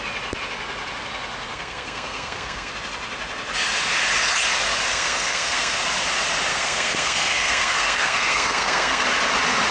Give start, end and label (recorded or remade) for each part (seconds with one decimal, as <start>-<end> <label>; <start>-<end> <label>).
0.0-1.5 recorded; 1.5-2.7 remade; 2.7-4.9 recorded; 4.9-5.8 remade; 5.8-6.5 recorded; 6.5-9.0 remade; 9.0-9.7 recorded